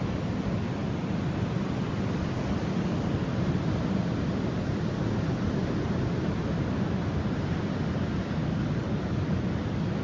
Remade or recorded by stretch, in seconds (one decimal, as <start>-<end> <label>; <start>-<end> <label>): 0.0-8.4 recorded; 8.4-9.4 remade; 9.4-10.0 recorded